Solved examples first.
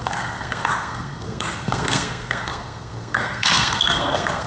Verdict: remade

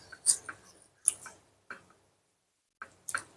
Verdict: recorded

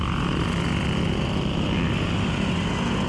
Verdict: recorded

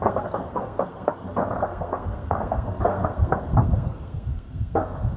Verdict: remade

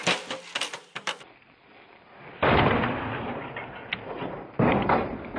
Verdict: recorded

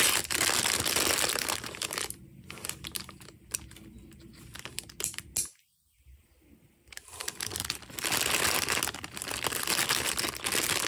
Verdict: recorded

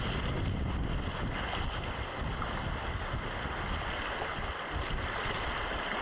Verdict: recorded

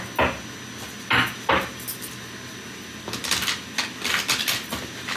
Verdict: recorded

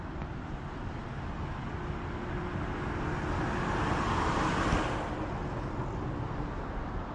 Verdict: recorded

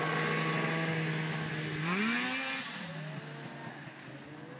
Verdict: recorded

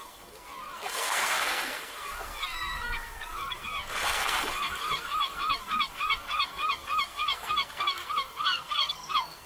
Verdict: remade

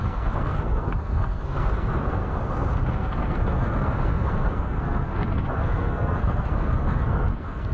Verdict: remade